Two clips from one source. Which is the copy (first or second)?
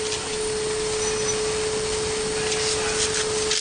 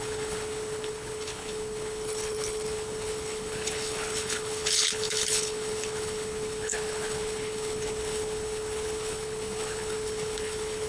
second